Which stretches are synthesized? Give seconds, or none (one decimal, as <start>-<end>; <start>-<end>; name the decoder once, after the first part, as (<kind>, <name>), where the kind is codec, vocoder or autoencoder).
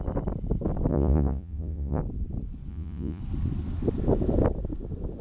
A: 0.9-2.0 (vocoder, Vocos); 2.7-3.2